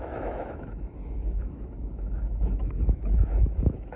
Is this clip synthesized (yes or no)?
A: yes